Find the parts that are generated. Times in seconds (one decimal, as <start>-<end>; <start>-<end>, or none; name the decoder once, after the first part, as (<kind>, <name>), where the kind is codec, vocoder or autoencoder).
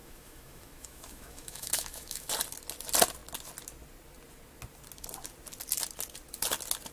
0.0-2.3 (autoencoder, DAC-VAE)